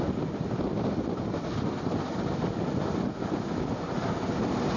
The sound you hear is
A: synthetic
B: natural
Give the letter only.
B